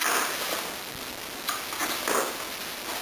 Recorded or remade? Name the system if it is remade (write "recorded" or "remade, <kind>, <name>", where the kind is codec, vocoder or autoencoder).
recorded